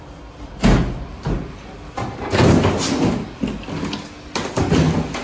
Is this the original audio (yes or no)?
yes